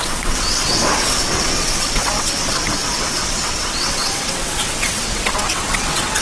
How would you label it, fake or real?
fake